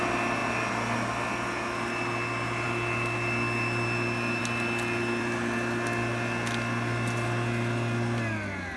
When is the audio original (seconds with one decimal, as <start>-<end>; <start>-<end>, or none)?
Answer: 0.0-8.8